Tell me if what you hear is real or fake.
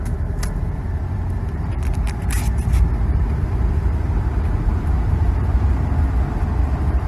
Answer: fake